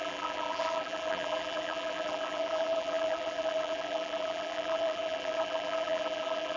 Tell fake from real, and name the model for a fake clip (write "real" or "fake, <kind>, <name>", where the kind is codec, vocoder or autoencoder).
fake, vocoder, BigVGAN v2